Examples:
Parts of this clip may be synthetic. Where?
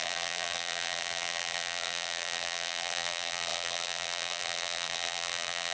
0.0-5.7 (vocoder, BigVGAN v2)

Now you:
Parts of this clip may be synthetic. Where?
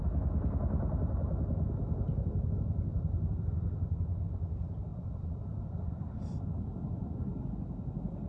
4.9-6.5 (vocoder, BigVGAN v2)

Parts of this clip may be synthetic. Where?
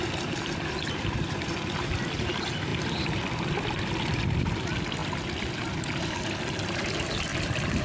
2.7-4.5 (vocoder, BigVGAN v2); 7.3-7.8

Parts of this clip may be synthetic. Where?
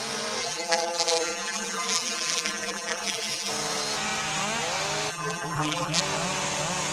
0.4-3.5 (vocoder, BigVGAN v2); 5.1-6.0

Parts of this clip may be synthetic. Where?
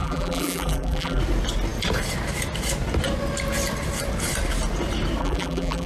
0.0-1.2 (vocoder, BigVGAN v2); 5.2-5.9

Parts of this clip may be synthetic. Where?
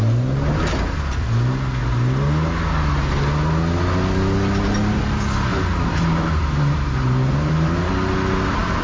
5.5-7.9 (vocoder, BigVGAN v2)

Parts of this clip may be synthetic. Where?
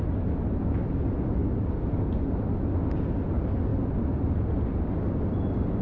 none